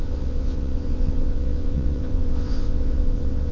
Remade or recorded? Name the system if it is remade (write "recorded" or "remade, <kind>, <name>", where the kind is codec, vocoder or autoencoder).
remade, vocoder, WaveNeXt